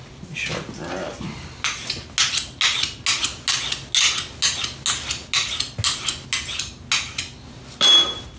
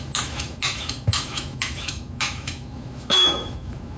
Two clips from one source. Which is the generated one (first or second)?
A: second